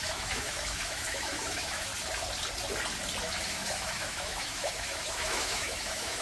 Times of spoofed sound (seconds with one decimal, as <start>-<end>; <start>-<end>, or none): 0.0-1.9; 3.2-6.2